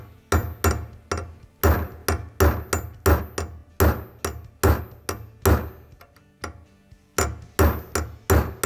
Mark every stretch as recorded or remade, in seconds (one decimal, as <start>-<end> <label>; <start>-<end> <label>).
0.0-8.7 recorded